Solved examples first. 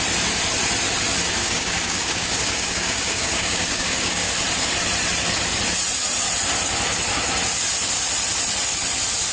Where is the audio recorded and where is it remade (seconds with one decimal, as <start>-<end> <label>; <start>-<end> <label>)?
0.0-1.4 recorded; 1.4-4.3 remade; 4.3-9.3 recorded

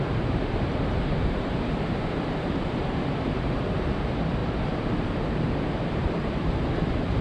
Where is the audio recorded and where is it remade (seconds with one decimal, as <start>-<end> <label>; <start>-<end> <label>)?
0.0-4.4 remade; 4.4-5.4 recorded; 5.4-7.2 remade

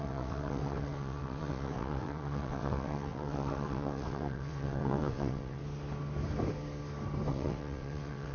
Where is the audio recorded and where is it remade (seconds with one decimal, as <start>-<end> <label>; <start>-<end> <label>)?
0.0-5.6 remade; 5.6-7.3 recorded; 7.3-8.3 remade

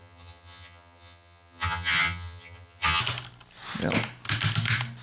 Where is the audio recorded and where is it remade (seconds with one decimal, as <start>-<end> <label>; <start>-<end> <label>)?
0.0-3.0 remade; 3.0-5.0 recorded

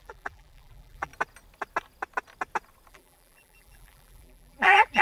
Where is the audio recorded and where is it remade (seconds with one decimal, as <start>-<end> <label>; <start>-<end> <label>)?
0.0-1.1 remade; 1.1-2.9 recorded; 2.9-5.0 remade

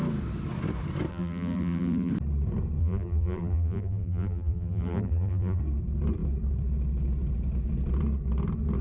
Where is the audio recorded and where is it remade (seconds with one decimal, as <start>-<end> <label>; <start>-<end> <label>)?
0.0-1.1 recorded; 1.1-2.1 remade; 2.1-2.8 recorded; 2.8-5.6 remade; 5.6-8.8 recorded